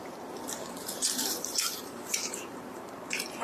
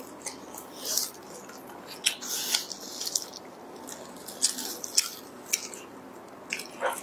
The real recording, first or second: second